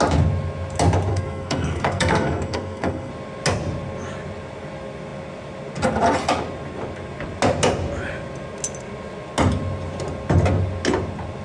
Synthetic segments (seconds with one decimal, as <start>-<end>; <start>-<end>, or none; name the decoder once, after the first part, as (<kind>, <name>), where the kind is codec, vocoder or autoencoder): 1.1-3.1 (codec, SNAC)